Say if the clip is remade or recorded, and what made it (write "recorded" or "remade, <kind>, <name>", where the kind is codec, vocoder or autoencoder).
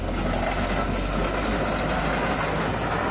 recorded